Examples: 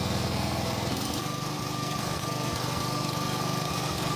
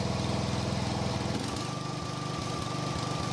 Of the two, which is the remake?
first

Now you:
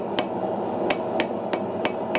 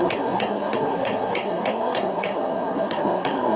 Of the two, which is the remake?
second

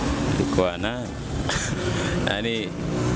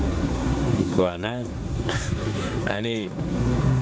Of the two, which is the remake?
second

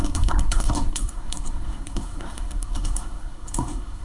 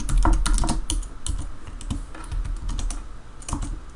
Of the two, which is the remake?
first